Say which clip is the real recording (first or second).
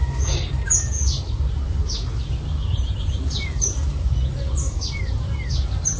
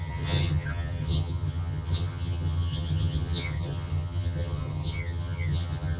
first